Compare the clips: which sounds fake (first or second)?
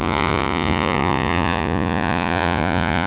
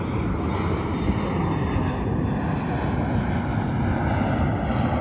first